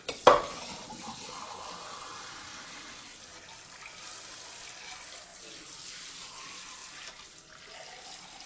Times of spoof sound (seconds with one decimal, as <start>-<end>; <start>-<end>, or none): none